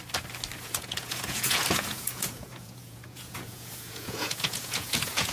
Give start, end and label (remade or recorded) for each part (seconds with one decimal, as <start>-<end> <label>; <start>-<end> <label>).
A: 0.0-0.6 recorded; 0.6-5.3 remade